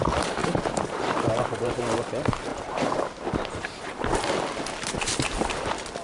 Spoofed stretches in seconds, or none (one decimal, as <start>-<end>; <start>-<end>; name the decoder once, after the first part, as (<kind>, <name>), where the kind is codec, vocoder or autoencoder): 0.4-1.8 (vocoder, BigVGAN v2); 2.5-4.3